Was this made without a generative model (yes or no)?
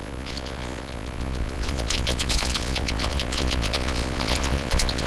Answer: no